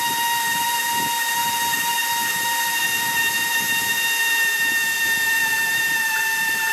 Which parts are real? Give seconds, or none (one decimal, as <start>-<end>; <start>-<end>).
1.4-5.4